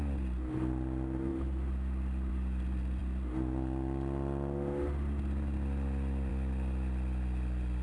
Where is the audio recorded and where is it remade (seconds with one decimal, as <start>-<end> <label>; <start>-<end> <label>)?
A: 0.0-7.8 recorded